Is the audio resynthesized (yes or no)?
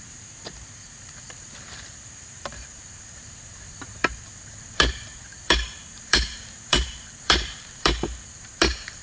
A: yes